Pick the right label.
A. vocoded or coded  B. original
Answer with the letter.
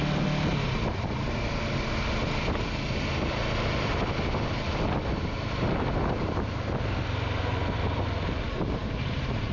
B